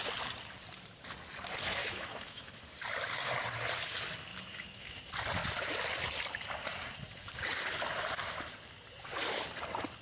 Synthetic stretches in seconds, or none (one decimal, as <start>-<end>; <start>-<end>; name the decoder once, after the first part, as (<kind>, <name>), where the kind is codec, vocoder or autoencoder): 1.8-2.5 (autoencoder, DAC-VAE); 4.3-5.0